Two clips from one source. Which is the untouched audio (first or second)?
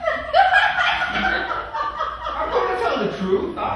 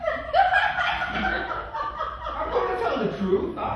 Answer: first